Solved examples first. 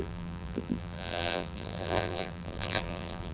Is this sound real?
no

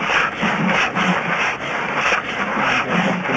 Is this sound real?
no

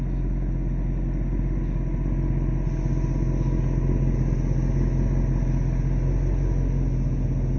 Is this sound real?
yes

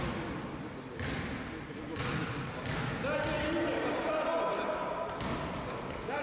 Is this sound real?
yes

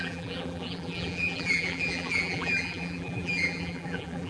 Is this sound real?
no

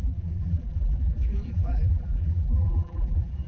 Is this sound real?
no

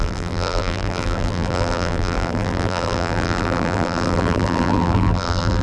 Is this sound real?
no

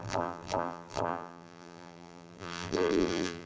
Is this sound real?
no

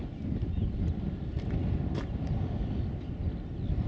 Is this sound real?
yes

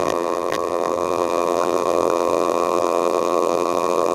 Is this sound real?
no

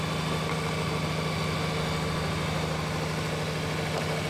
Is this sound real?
yes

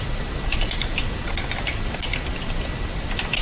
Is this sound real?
yes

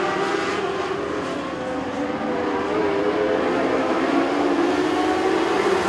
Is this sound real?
yes